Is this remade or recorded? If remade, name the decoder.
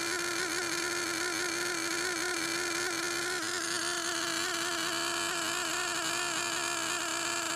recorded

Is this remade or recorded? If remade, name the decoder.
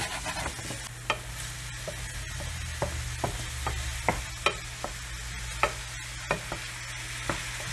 recorded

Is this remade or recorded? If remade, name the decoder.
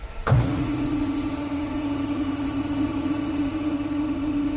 remade, vocoder, Vocos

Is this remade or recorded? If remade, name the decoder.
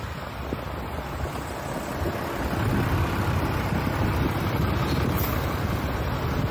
recorded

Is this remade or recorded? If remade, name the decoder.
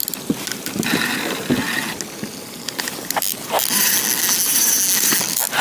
recorded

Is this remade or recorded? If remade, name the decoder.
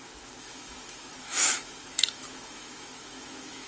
remade, autoencoder, DAC-VAE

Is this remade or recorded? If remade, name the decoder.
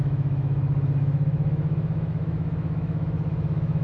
remade, autoencoder, DAC-VAE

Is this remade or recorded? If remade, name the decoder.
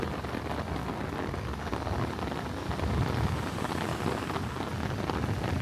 recorded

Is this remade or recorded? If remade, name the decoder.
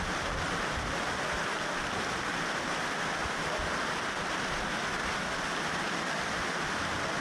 recorded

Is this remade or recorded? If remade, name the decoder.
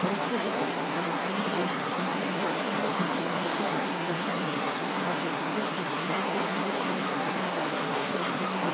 remade, codec, SNAC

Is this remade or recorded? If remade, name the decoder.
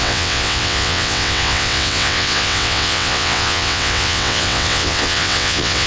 remade, vocoder, WaveNeXt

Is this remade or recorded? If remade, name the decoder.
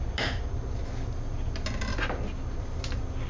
recorded